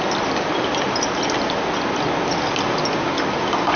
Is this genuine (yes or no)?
yes